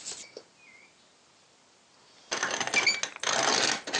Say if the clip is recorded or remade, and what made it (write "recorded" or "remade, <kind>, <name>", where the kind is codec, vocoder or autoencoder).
recorded